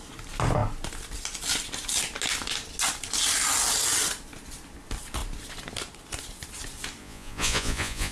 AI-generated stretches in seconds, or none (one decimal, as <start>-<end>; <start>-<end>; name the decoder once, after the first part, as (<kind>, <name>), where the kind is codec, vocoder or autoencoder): 7.0-8.1 (vocoder, Vocos)